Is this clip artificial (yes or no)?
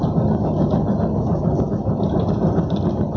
no